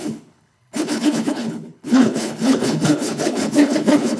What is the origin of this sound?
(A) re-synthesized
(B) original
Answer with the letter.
A